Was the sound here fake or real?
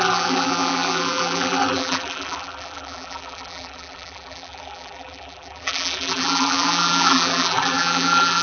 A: fake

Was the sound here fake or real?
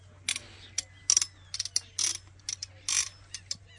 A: real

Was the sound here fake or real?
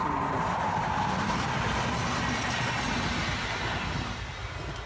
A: real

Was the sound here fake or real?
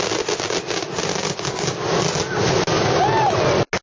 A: real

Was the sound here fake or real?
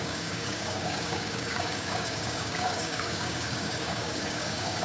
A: fake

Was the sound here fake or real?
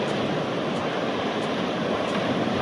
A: real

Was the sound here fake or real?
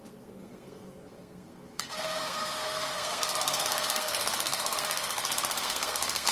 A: fake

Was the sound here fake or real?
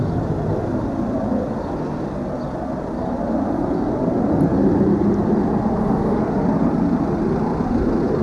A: real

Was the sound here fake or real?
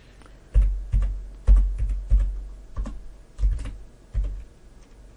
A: real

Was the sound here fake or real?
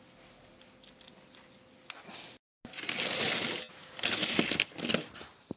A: real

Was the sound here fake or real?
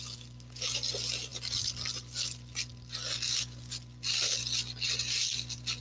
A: real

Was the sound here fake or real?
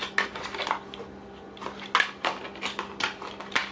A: real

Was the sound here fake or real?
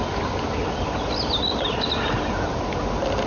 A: real